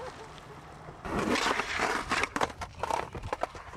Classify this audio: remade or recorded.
remade